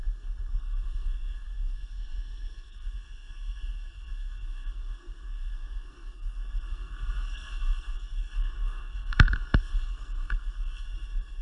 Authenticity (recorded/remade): remade